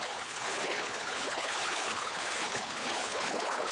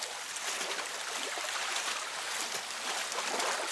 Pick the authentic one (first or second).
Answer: second